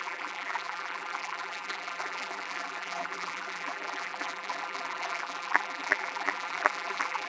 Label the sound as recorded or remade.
remade